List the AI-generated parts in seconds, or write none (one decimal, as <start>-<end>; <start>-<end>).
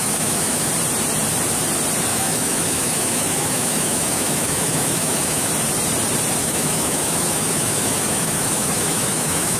0.0-0.7; 2.1-5.5; 6.4-9.6